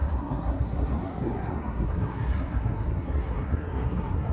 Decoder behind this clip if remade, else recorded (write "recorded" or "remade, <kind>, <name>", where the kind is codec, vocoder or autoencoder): remade, codec, SNAC